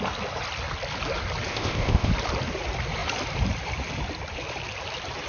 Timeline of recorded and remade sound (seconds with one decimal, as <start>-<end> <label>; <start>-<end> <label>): 0.0-1.5 recorded; 1.5-2.1 remade; 2.1-5.3 recorded

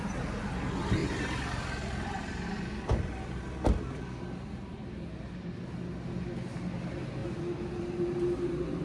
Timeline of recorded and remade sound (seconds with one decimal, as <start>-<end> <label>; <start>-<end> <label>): 0.0-1.0 recorded; 1.0-1.6 remade; 1.6-8.8 recorded

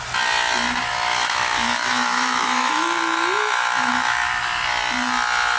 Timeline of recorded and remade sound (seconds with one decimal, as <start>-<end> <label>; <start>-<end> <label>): 0.0-0.9 recorded; 0.9-4.3 remade; 4.3-5.6 recorded

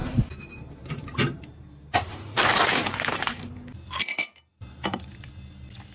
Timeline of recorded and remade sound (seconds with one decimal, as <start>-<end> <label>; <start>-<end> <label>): 0.0-3.5 remade; 3.5-4.5 recorded; 4.5-5.3 remade; 5.3-5.9 recorded

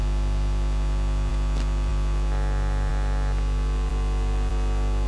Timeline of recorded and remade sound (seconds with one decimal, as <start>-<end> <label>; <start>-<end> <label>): 0.0-5.1 recorded

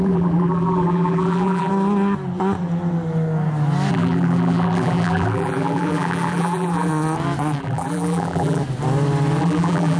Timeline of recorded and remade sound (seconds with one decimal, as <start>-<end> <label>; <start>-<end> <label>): 0.0-1.7 remade; 1.7-3.9 recorded; 3.9-6.9 remade; 6.9-7.6 recorded; 7.6-8.6 remade; 8.6-9.4 recorded; 9.4-10.0 remade

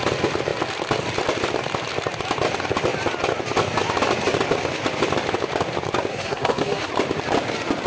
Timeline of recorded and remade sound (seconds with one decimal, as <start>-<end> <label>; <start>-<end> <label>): 0.0-6.1 recorded; 6.1-6.9 remade; 6.9-7.9 recorded